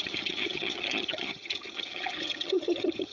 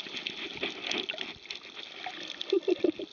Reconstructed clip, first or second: first